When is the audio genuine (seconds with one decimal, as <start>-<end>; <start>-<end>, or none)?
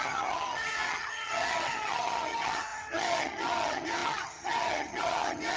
none